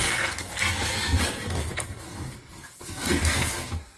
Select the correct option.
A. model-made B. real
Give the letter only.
A